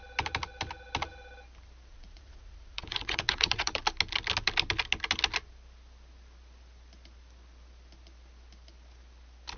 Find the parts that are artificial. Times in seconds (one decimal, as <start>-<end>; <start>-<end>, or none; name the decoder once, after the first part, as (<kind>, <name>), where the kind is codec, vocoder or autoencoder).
1.9-3.8 (vocoder, Vocos)